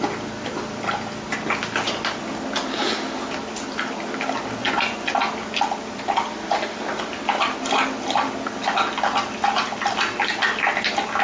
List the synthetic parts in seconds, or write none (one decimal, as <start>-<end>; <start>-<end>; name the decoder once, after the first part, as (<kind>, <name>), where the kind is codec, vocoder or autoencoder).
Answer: 4.6-5.1 (vocoder, Vocos)